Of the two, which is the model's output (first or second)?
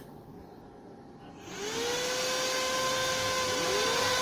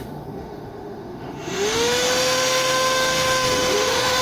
second